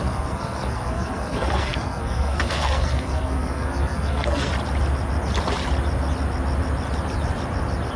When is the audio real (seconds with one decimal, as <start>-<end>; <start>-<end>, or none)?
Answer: 4.5-8.0